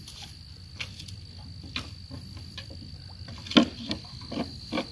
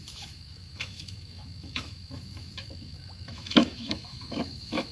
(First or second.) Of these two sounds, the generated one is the second